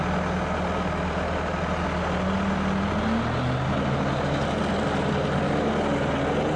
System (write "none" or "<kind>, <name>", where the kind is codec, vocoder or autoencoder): none